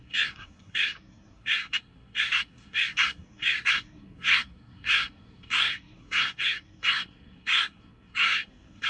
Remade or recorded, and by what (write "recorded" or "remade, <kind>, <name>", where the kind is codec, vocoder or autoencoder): remade, codec, SNAC